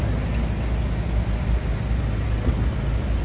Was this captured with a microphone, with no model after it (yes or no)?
yes